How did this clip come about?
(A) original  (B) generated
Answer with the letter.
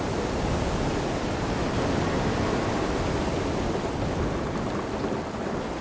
A